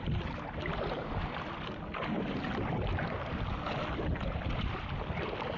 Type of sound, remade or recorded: recorded